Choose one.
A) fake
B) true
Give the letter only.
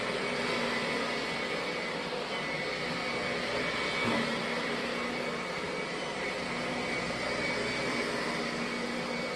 B